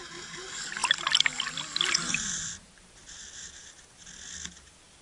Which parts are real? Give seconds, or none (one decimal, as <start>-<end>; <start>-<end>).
0.0-5.0